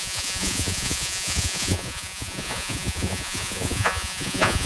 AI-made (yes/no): yes